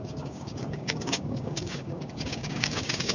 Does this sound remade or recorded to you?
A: remade